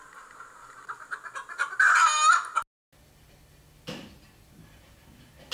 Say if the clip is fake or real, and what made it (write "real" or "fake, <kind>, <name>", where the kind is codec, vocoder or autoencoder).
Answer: real